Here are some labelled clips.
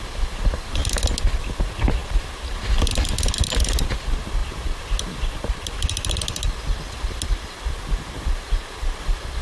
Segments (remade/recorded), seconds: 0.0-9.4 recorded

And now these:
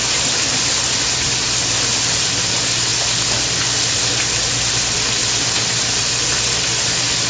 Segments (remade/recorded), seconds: 0.0-7.3 recorded

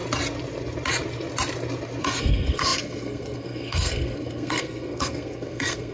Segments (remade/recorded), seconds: 0.0-2.0 recorded; 2.0-5.9 remade

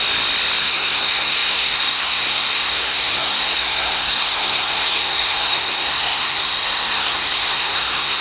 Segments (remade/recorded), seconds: 0.0-0.6 recorded; 0.6-8.2 remade

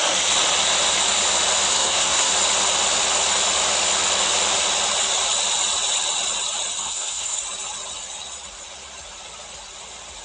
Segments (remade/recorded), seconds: 0.0-1.7 recorded; 1.7-2.3 remade; 2.3-6.8 recorded; 6.8-7.4 remade; 7.4-10.2 recorded

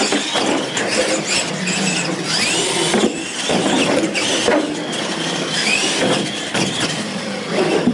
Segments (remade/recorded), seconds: 0.0-7.9 recorded